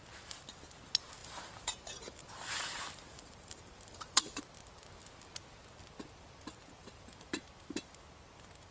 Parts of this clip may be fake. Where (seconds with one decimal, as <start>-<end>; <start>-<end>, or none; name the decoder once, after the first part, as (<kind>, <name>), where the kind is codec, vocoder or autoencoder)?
1.2-4.4 (vocoder, BigVGAN v2); 6.8-7.5